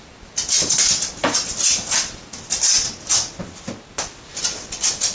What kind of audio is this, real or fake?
real